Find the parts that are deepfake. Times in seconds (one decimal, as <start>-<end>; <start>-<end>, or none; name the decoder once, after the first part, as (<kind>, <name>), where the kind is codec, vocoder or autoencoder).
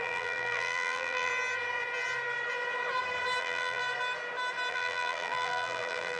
0.0-1.3 (vocoder, BigVGAN v2); 3.4-3.8; 4.7-6.2